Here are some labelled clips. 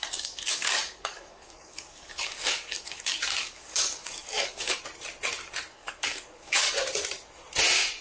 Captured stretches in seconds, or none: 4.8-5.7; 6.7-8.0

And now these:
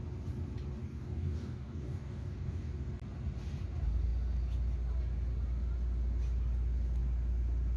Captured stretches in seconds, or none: 0.0-0.8; 2.9-7.8